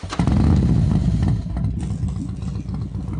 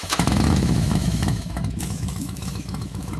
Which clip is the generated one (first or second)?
second